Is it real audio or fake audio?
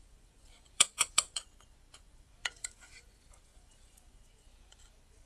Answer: fake